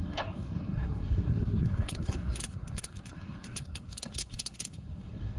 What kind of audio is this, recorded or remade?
remade